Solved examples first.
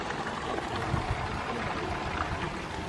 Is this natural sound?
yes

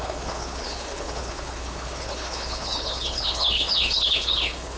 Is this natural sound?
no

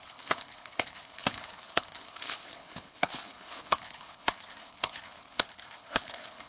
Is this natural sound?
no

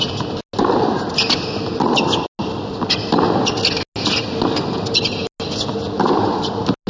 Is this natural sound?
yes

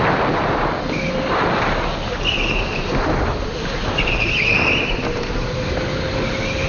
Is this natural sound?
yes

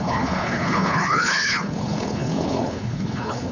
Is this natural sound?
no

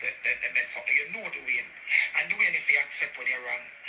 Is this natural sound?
yes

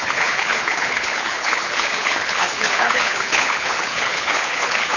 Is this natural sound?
no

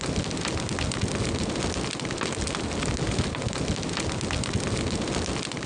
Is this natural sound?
yes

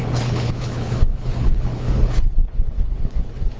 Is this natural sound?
no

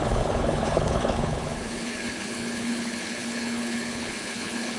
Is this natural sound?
no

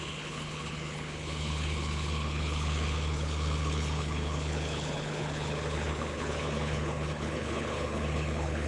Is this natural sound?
no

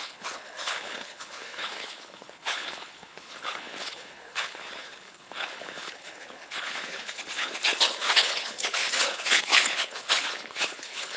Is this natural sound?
no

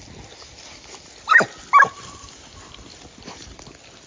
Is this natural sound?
yes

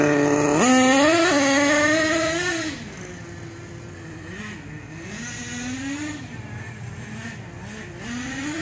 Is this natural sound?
yes